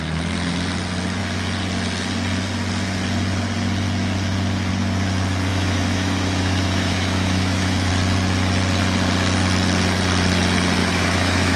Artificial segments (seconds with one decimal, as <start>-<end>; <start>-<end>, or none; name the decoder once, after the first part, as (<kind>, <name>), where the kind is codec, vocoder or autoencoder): 5.5-7.9 (autoencoder, DAC-VAE); 10.8-11.6